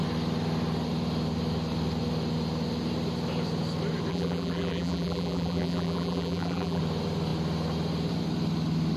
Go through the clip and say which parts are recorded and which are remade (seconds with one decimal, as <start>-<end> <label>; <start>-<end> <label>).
0.0-4.1 recorded; 4.1-6.8 remade; 6.8-9.0 recorded